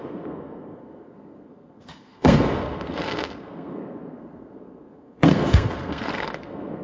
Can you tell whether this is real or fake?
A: fake